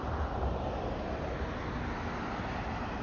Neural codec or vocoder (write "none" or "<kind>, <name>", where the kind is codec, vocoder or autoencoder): none